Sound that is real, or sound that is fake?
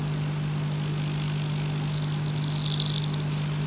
real